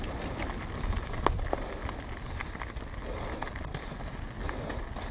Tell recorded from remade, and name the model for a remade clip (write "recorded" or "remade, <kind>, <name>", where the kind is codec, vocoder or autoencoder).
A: recorded